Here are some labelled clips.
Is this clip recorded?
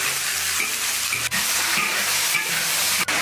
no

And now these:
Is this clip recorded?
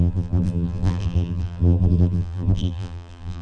no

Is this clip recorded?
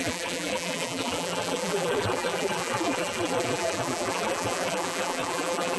no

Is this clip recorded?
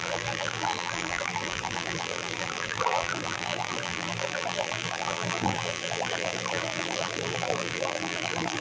no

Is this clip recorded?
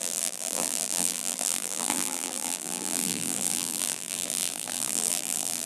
no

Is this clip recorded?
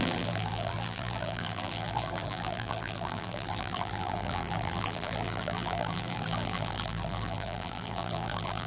no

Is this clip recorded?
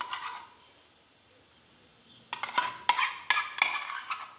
yes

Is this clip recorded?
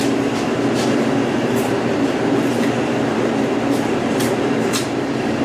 no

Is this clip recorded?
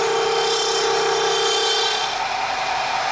yes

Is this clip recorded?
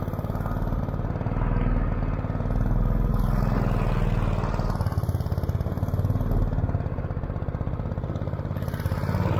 yes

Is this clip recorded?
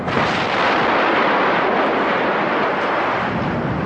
yes